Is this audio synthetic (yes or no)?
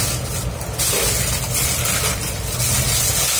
no